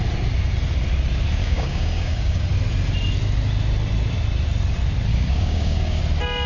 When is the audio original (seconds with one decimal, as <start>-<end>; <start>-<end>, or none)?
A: 0.0-1.4; 2.4-5.1; 6.0-6.5